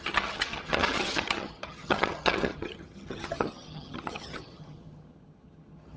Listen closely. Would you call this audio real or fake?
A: fake